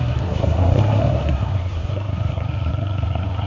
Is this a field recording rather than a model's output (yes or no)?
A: no